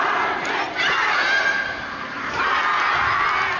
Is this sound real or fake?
real